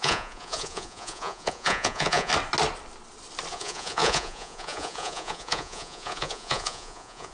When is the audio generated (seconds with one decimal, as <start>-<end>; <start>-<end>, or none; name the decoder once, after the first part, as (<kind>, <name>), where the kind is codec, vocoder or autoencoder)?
0.0-2.3 (vocoder, Vocos); 3.5-7.3